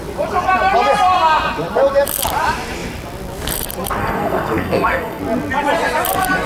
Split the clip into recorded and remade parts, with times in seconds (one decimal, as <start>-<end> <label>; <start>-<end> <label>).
0.0-4.0 recorded; 4.0-5.2 remade; 5.2-6.5 recorded